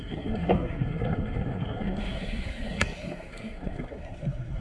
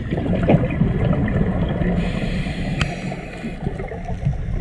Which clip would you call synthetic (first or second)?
first